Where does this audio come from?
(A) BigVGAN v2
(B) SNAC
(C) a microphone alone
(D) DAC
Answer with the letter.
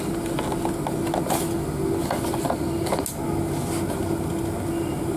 C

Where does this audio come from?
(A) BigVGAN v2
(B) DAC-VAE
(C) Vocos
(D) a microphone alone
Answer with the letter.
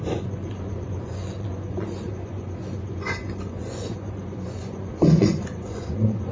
C